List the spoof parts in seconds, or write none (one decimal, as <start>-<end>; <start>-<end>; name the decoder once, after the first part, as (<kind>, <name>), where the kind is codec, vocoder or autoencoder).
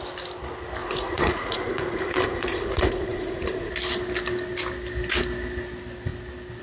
0.8-3.7 (vocoder, Vocos)